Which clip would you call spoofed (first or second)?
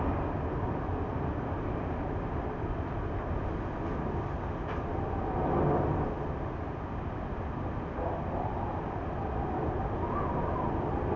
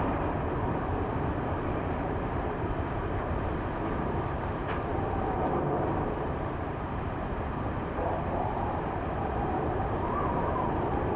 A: second